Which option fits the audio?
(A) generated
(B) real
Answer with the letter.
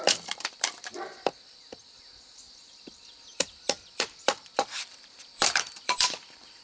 A